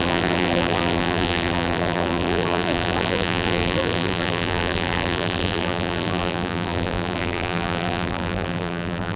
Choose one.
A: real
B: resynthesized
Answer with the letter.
B